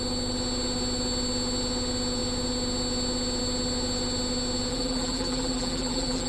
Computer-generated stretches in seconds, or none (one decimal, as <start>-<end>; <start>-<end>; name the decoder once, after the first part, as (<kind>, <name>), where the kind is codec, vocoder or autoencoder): 4.7-6.3 (vocoder, BigVGAN v2)